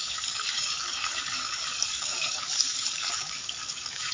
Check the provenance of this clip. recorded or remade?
remade